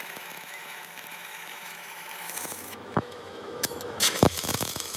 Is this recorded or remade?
remade